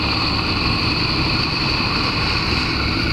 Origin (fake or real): fake